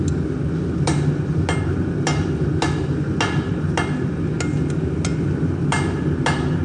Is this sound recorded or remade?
recorded